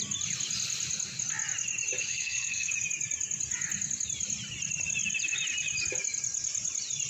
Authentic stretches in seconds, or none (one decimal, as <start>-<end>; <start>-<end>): 0.0-2.0; 2.7-7.1